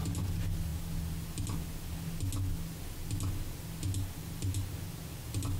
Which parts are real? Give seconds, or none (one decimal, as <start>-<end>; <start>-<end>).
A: 0.0-5.6